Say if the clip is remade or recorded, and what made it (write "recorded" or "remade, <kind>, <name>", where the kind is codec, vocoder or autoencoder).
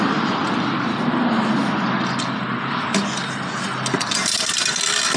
recorded